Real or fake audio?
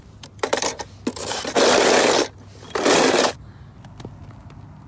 real